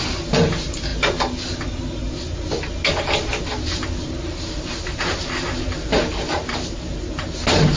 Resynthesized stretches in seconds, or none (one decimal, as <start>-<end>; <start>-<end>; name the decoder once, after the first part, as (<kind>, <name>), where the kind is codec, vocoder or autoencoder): 0.0-0.9 (vocoder, BigVGAN v2); 4.1-7.8